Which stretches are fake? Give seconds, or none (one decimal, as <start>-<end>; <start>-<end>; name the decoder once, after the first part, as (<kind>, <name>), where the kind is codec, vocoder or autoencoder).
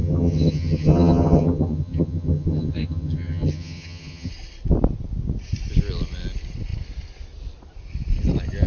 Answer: 0.0-4.3 (vocoder, HiFi-GAN)